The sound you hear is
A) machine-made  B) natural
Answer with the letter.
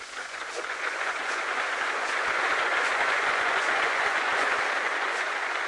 A